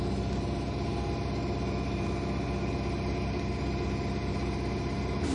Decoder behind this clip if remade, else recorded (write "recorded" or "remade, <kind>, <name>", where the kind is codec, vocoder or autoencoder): recorded